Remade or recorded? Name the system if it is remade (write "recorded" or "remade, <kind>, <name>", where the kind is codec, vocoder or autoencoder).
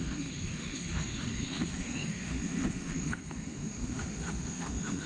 remade, autoencoder, DAC-VAE